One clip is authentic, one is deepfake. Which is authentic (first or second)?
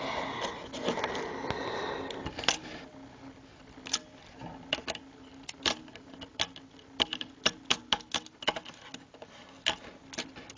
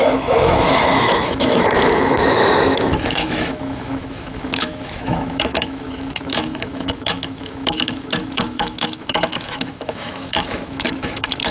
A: first